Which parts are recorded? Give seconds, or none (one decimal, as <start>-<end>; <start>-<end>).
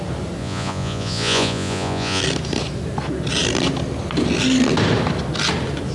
0.0-0.4; 2.2-5.9